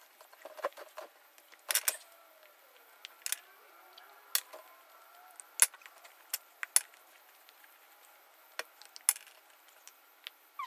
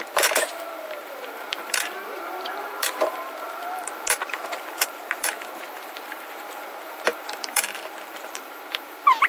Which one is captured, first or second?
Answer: first